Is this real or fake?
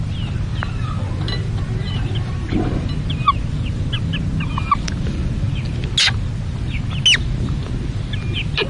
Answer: real